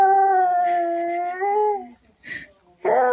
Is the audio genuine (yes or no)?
yes